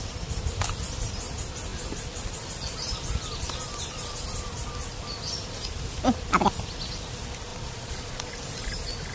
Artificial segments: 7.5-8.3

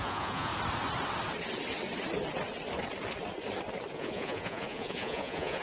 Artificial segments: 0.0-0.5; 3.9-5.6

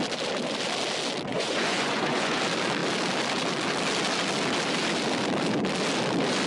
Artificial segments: 1.3-2.4

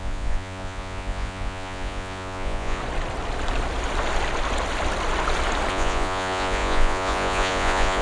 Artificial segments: 0.0-2.8; 5.7-8.0